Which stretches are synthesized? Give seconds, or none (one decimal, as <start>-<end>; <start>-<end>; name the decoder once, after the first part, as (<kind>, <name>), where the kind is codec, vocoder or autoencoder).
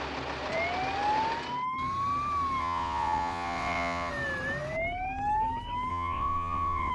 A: 2.6-4.1 (vocoder, WaveNeXt); 5.9-6.9